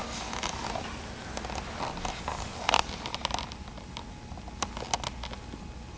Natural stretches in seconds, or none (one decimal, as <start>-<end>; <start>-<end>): 0.0-6.0